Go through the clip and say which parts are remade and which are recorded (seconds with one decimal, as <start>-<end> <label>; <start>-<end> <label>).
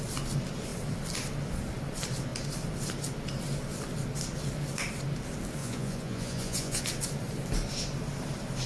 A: 0.0-5.6 recorded; 5.6-6.8 remade; 6.8-8.7 recorded